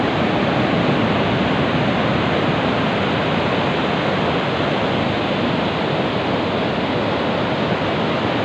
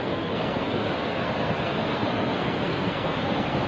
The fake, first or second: second